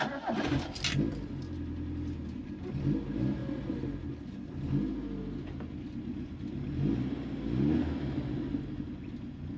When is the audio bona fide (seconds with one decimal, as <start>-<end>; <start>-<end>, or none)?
0.0-9.6